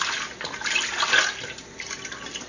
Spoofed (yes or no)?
no